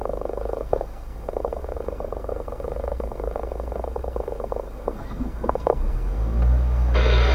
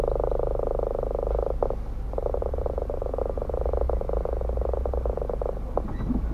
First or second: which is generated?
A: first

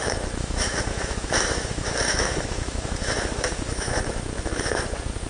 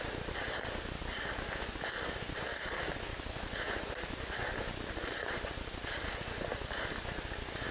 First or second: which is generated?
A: first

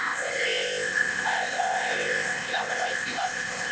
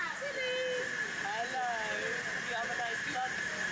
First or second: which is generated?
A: first